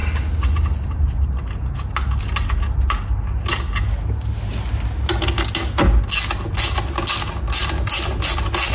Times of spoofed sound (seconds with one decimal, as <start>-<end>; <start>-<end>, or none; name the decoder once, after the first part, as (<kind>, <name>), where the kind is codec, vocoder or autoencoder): none